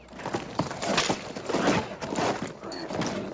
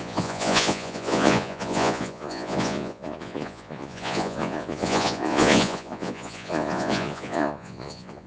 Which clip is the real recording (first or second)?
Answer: first